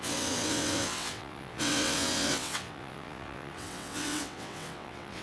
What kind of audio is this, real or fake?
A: fake